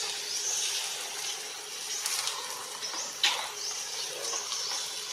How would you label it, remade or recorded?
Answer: recorded